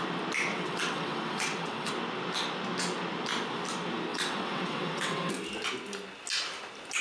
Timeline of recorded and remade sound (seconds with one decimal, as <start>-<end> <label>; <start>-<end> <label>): 0.0-0.5 recorded; 0.5-1.9 remade; 1.9-4.1 recorded; 4.1-5.3 remade; 5.3-7.0 recorded